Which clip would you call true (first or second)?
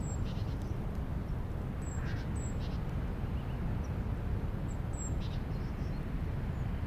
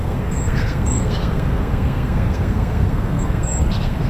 first